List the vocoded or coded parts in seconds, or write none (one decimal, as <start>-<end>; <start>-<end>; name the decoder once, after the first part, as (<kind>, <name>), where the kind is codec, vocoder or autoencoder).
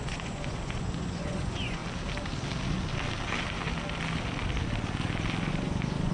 0.0-1.8 (vocoder, Vocos); 5.5-6.1